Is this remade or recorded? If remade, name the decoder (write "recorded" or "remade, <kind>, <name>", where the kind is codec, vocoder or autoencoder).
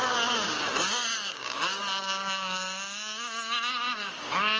remade, codec, DAC